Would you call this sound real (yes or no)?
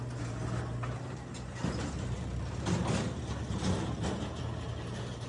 yes